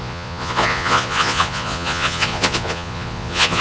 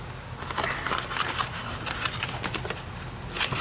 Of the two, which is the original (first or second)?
second